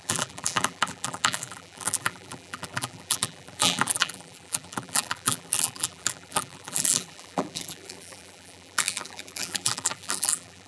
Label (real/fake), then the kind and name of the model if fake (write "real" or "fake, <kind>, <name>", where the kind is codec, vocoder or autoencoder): fake, vocoder, BigVGAN v2